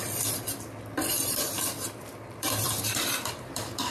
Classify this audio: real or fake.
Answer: fake